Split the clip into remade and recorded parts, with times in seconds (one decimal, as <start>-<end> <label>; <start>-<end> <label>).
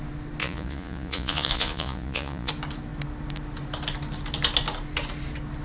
0.0-0.4 recorded; 0.4-2.5 remade; 2.5-5.6 recorded